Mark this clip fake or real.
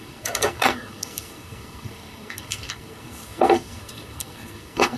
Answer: fake